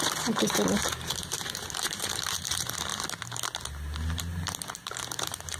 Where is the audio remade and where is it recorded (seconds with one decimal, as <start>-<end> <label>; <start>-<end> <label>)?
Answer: 0.0-2.9 remade; 2.9-4.6 recorded; 4.6-5.6 remade